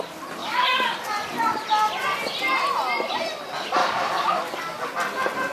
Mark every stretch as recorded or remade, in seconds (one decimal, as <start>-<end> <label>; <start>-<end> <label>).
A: 0.0-0.4 recorded; 0.4-0.9 remade; 0.9-3.8 recorded; 3.8-4.9 remade; 4.9-5.5 recorded

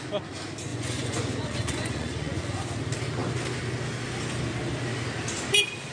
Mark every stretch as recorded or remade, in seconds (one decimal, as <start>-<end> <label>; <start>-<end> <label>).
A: 0.0-0.7 recorded; 0.7-2.4 remade; 2.4-5.9 recorded